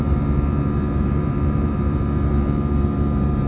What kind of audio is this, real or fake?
fake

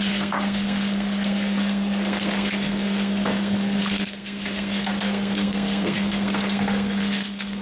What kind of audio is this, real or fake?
fake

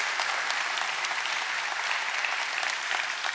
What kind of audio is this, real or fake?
real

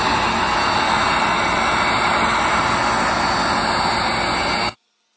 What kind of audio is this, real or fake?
real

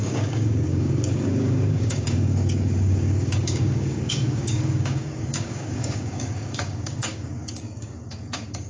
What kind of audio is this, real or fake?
fake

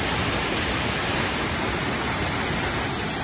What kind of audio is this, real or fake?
real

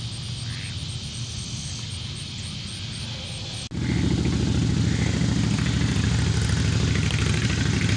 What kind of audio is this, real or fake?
real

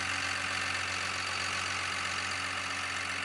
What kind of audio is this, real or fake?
real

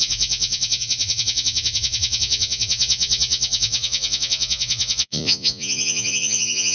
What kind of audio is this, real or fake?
fake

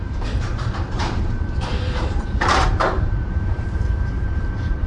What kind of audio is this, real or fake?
fake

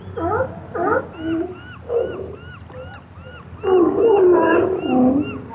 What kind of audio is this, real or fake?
real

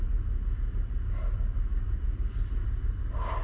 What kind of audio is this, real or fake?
real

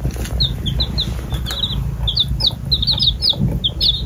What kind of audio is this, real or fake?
real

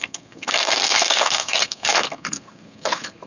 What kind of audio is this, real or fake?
fake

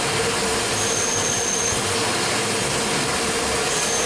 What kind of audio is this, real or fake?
real